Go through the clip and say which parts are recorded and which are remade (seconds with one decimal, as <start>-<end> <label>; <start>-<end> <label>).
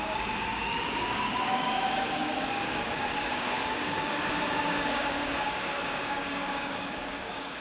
0.0-7.6 remade